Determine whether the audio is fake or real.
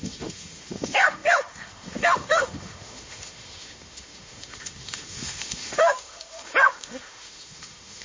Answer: fake